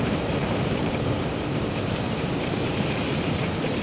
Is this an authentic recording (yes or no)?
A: no